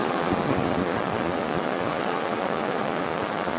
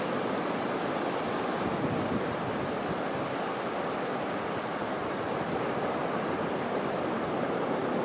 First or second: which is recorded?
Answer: second